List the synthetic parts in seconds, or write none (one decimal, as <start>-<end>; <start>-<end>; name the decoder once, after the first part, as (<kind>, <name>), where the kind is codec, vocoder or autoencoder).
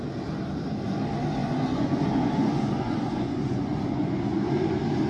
1.4-4.5 (vocoder, Vocos)